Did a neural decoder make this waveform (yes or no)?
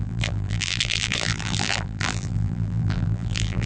yes